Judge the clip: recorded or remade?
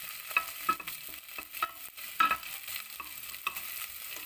recorded